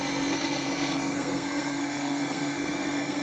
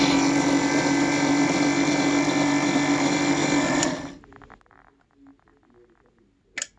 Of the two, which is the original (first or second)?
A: second